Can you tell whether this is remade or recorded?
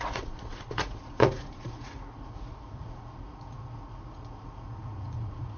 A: remade